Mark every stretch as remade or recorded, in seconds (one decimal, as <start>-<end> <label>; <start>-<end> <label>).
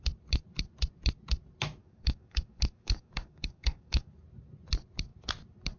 0.0-1.8 recorded; 1.8-4.1 remade; 4.1-5.8 recorded